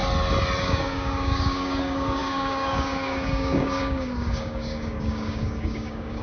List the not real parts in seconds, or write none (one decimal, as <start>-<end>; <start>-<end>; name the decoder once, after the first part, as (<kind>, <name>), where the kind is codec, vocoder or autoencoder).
0.6-6.2 (codec, DAC)